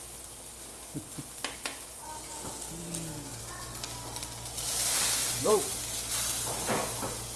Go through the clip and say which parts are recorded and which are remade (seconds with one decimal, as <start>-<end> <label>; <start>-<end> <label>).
0.0-5.2 recorded; 5.2-5.8 remade; 5.8-7.4 recorded